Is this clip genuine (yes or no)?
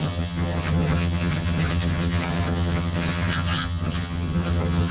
no